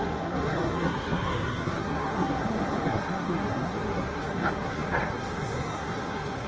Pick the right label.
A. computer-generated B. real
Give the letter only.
A